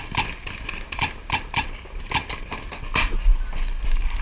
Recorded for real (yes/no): yes